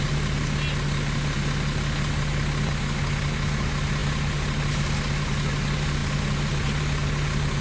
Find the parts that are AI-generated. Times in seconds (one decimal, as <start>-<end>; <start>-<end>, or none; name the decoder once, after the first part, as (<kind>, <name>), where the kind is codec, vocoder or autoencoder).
none